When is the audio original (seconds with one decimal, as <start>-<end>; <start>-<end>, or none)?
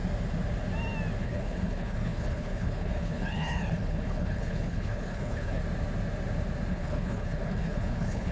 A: 0.0-1.2; 5.6-6.7